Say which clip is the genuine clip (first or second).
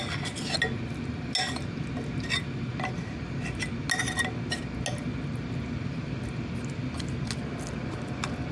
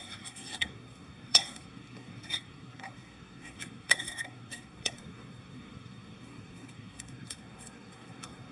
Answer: first